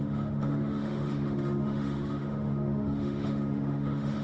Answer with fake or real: fake